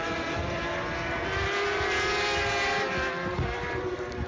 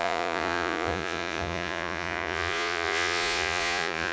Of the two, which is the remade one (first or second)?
second